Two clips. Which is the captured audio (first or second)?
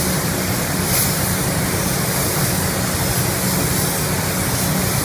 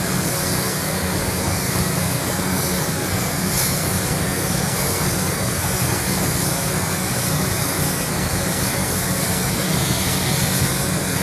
first